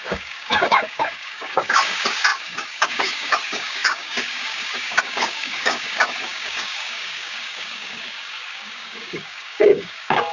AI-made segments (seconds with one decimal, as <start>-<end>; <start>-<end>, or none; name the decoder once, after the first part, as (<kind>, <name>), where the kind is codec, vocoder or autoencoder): 0.0-10.3 (codec, DAC)